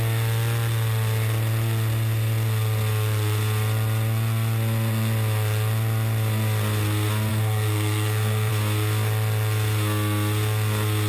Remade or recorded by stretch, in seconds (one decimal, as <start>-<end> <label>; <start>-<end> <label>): 0.0-7.3 recorded; 7.3-8.5 remade; 8.5-11.1 recorded